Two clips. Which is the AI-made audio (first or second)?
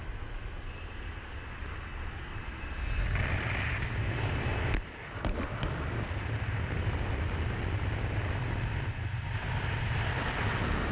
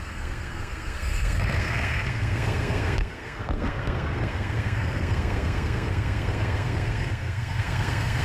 second